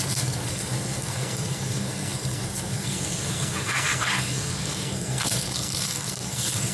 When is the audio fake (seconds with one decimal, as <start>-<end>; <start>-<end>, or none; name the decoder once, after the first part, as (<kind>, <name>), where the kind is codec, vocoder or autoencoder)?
0.0-6.7 (codec, SNAC)